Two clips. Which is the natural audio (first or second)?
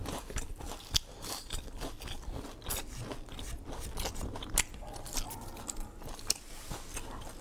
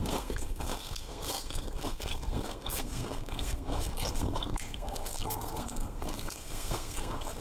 first